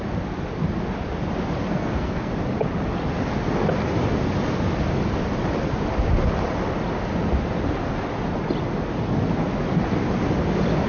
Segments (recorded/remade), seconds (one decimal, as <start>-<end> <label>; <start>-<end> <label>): 0.0-1.7 recorded; 1.7-2.3 remade; 2.3-10.9 recorded